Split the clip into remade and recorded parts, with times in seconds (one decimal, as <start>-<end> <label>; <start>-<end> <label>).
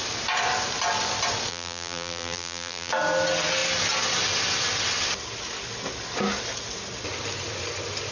0.0-1.5 recorded; 1.5-2.9 remade; 2.9-8.1 recorded